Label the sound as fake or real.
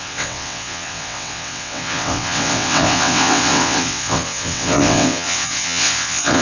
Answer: fake